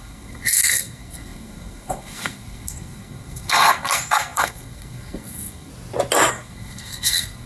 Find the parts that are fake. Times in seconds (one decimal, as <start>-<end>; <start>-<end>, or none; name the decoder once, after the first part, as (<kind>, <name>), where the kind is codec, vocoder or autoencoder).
0.0-5.7 (codec, SNAC); 6.3-7.5